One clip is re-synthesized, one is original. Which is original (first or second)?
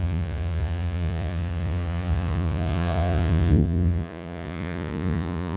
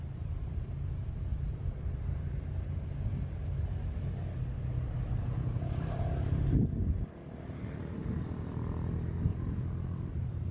second